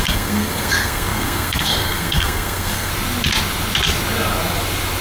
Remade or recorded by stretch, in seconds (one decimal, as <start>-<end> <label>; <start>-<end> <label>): 0.0-2.9 remade; 2.9-5.0 recorded